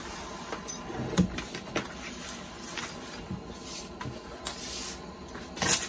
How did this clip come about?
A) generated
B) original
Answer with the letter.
B